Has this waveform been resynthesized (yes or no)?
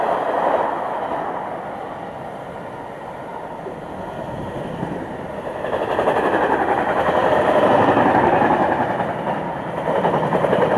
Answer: no